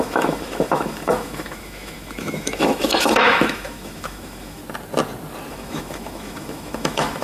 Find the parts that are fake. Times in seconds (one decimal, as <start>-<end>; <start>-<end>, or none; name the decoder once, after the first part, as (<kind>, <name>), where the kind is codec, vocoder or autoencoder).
0.0-4.6 (autoencoder, DAC-VAE); 5.5-7.2